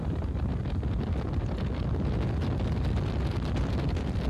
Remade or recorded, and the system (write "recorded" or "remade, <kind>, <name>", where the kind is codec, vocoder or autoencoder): recorded